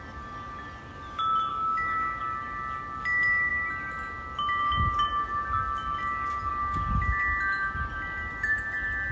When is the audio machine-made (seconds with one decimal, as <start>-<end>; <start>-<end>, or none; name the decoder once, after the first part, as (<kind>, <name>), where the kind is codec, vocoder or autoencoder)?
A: 1.5-2.2 (autoencoder, DAC-VAE)